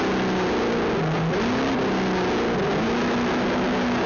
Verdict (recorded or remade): recorded